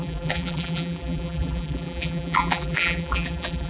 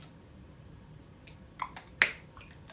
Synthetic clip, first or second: first